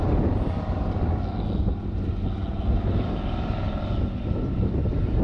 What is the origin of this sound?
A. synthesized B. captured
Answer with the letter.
B